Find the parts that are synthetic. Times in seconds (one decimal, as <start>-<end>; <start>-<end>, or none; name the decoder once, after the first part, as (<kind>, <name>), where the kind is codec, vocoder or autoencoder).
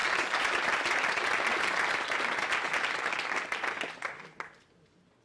none